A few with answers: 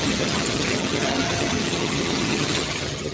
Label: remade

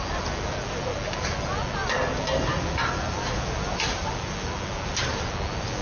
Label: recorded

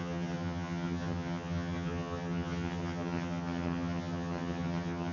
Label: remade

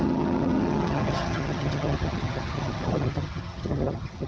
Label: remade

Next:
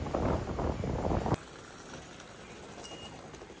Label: recorded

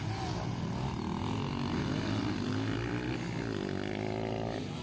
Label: recorded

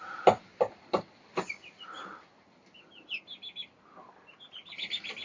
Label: recorded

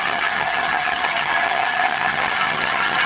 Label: remade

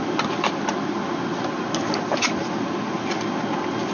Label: recorded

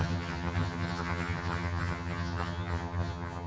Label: remade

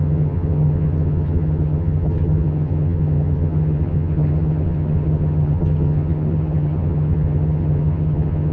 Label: remade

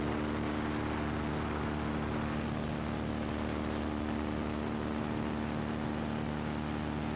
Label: recorded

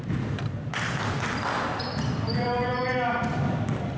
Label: recorded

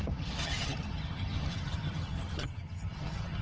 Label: remade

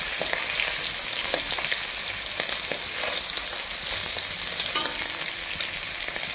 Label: recorded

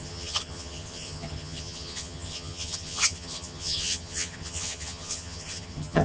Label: remade